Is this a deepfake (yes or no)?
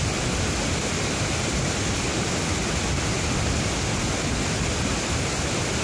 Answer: no